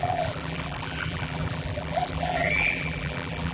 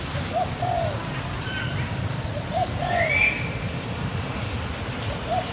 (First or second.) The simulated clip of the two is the first